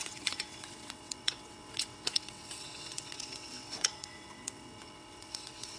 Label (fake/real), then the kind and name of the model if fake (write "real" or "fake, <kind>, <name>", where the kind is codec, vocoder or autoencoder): fake, vocoder, WaveNeXt